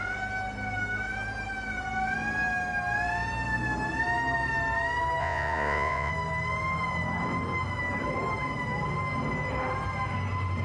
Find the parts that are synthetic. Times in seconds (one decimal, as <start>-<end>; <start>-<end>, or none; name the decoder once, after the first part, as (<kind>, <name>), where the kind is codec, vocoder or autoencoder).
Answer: 5.2-6.1 (vocoder, Vocos)